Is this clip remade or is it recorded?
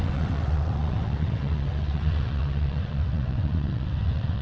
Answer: remade